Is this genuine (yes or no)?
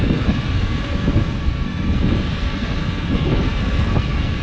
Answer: no